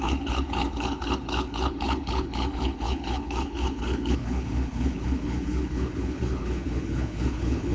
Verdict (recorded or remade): remade